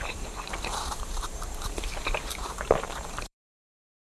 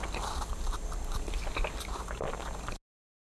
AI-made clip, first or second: first